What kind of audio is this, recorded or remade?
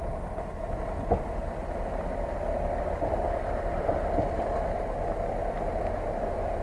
remade